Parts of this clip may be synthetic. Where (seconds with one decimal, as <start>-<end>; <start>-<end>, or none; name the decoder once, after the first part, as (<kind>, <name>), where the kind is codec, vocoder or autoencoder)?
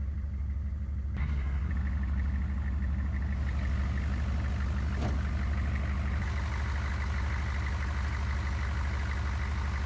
1.2-1.7 (codec, SNAC)